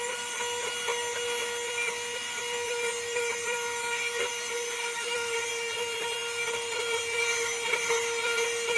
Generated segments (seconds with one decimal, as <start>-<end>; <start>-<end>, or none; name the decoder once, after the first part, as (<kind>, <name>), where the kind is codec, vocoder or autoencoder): 4.3-5.5 (vocoder, BigVGAN v2); 6.2-6.8

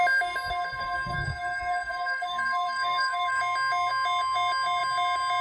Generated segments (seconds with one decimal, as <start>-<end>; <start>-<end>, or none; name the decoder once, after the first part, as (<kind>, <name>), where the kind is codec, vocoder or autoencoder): 0.8-3.4 (codec, SNAC)

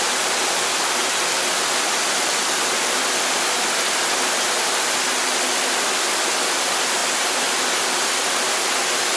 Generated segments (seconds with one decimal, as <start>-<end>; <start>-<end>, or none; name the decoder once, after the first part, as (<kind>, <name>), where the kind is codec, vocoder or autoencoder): none

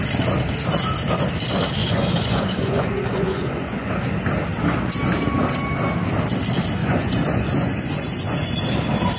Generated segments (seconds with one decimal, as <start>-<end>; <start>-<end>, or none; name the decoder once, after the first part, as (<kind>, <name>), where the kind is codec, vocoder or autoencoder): 1.8-3.9 (vocoder, Vocos); 6.8-8.7

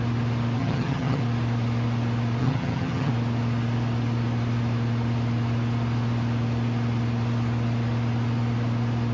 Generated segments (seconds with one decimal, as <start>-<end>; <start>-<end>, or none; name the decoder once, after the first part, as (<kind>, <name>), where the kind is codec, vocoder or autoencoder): 0.6-1.2 (vocoder, HiFi-GAN); 2.4-3.1

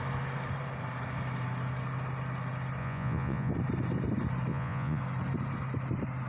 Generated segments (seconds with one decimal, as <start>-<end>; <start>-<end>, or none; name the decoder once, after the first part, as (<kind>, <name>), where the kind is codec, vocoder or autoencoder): 2.8-3.5 (vocoder, Vocos); 4.5-5.0

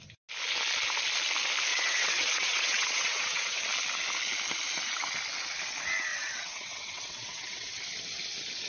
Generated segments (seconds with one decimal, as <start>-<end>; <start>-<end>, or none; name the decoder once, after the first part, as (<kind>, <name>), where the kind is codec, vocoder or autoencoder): 1.7-3.6 (vocoder, WaveNeXt); 6.1-7.8

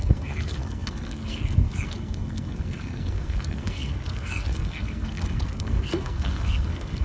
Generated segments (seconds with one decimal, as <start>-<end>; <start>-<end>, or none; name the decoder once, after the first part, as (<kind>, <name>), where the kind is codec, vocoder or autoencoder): 0.0-7.0 (codec, SNAC)